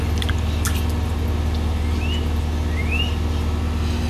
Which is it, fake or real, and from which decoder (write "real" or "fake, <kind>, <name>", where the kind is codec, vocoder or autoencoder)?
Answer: real